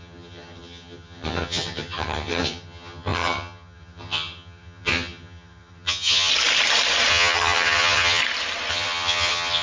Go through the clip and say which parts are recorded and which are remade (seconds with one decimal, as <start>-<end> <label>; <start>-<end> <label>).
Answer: 0.0-6.3 remade; 6.3-7.1 recorded; 7.1-8.2 remade; 8.2-8.7 recorded; 8.7-9.6 remade